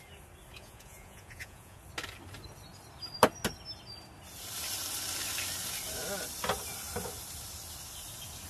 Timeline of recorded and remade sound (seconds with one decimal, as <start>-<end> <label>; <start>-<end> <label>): 0.0-0.5 recorded; 0.5-1.8 remade; 1.8-8.5 recorded